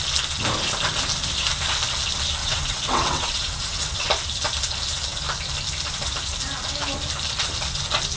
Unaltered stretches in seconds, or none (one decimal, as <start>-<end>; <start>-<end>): 0.0-2.4; 4.1-8.2